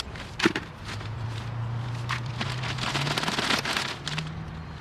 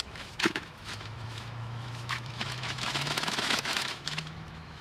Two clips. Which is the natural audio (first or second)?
first